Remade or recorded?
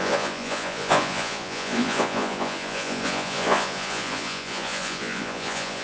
remade